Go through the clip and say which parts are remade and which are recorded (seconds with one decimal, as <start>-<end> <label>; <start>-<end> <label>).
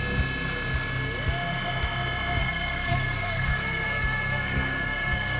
0.0-2.4 recorded; 2.4-5.4 remade